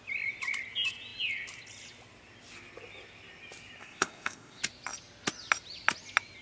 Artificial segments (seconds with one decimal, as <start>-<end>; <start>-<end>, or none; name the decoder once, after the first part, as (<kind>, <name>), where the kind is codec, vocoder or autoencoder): 3.8-4.6 (codec, ZipCodec)